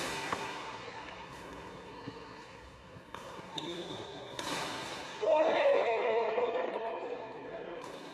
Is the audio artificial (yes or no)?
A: yes